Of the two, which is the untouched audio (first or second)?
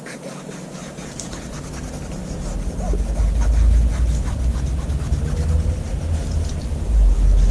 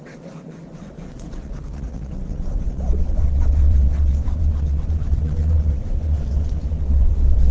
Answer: first